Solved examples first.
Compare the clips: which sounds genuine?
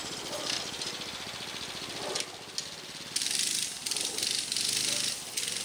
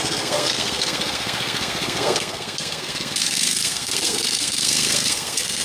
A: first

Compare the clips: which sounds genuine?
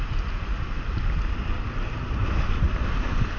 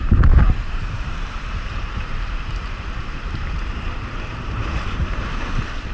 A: first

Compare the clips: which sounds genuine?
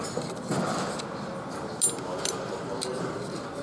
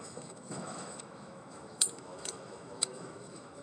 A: first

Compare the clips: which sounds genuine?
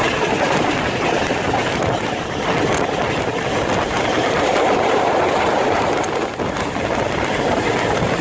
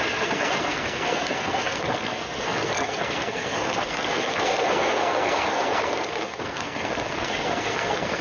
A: first